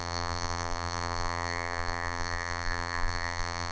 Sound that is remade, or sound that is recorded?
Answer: remade